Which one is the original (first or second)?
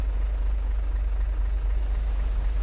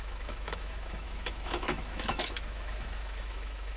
first